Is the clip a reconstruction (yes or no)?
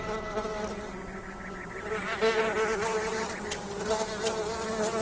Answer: no